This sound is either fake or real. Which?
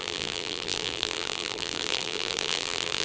fake